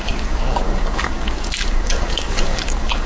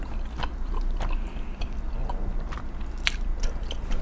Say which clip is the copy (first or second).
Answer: first